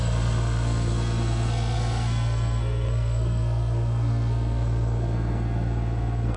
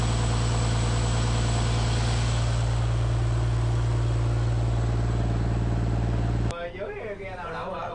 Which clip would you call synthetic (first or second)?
first